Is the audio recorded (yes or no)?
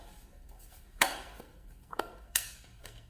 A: no